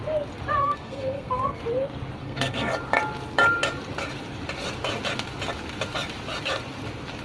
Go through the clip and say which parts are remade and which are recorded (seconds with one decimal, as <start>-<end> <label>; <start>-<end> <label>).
0.0-0.6 recorded; 0.6-1.6 remade; 1.6-2.2 recorded; 2.2-2.7 remade; 2.7-7.2 recorded